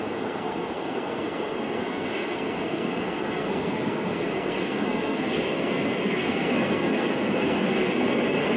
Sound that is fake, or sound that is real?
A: fake